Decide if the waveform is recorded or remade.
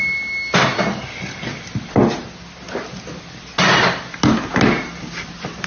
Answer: recorded